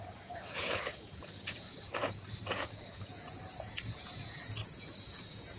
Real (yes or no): no